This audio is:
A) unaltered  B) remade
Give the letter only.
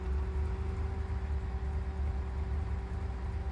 A